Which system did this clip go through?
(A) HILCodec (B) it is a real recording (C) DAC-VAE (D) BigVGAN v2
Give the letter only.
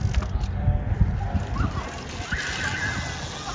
B